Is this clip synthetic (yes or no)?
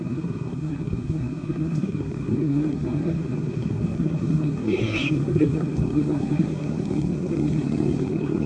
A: yes